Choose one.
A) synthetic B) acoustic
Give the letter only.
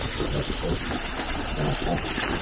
B